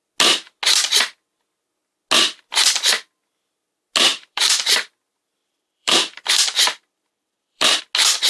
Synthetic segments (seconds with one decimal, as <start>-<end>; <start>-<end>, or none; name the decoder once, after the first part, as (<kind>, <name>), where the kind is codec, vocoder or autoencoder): 4.1-4.6 (vocoder, BigVGAN v2); 5.4-7.8